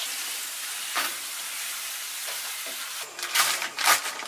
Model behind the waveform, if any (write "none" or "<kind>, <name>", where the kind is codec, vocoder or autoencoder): vocoder, BigVGAN v2